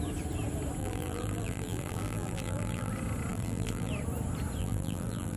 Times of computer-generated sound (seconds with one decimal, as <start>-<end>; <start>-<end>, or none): 0.8-2.9; 3.3-3.9; 4.6-5.4